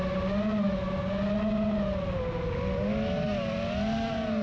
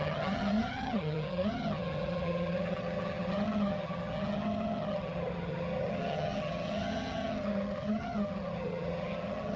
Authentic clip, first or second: first